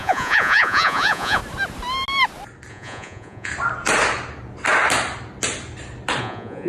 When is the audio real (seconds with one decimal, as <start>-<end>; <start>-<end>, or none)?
1.4-2.7; 3.5-6.2